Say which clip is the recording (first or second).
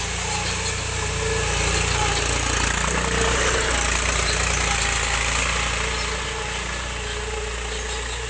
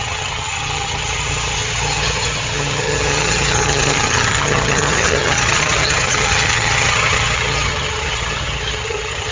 first